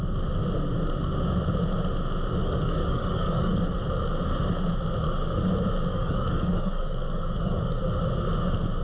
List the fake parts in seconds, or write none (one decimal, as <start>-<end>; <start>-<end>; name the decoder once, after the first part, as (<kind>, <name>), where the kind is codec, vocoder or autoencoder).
2.4-3.6 (codec, DAC); 5.9-7.8